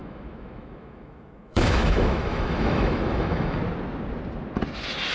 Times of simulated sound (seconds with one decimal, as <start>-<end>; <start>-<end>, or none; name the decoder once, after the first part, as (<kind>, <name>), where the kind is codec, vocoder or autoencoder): 0.0-3.6 (autoencoder, DAC-VAE)